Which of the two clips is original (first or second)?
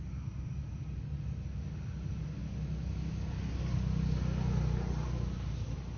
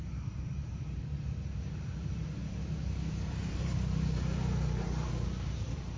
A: first